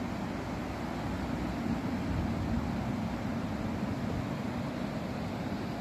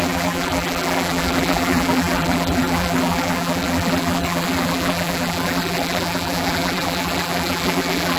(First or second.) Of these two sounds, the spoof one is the second